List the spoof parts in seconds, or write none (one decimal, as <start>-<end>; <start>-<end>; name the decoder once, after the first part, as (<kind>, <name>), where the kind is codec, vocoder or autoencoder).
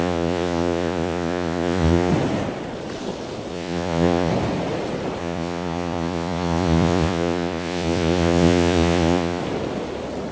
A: 0.0-2.1 (vocoder, Vocos); 3.5-4.3; 5.2-9.4